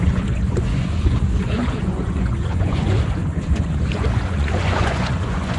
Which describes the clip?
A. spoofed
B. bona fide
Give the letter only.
A